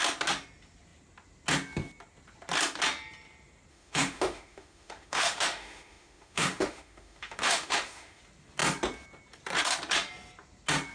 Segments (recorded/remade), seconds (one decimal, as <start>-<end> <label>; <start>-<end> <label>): 0.0-3.7 recorded; 3.7-8.2 remade; 8.2-10.9 recorded